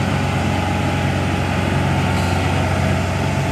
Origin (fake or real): real